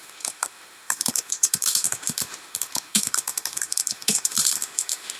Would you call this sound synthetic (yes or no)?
yes